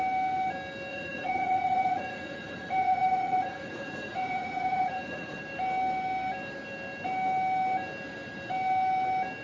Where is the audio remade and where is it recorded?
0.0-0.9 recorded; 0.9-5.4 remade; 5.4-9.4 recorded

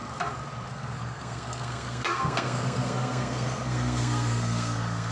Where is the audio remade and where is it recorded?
0.0-0.7 recorded; 0.7-5.1 remade

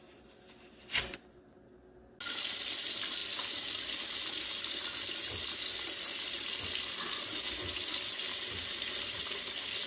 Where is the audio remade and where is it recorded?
0.0-9.9 recorded